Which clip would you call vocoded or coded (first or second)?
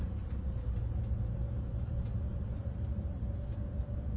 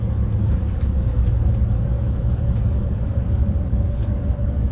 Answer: second